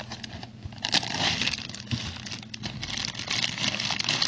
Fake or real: real